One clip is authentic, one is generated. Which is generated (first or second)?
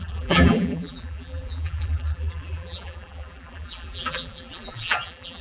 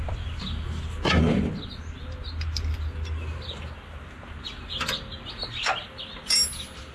first